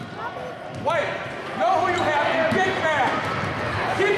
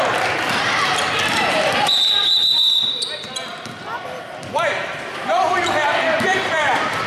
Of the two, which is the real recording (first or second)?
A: first